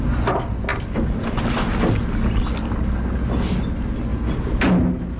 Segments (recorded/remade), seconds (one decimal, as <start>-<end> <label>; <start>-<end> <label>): 0.0-5.2 recorded